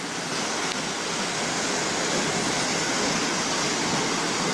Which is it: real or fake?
real